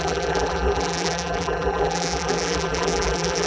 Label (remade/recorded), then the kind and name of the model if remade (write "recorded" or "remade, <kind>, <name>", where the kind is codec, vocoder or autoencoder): remade, vocoder, BigVGAN v2